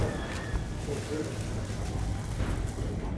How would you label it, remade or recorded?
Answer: recorded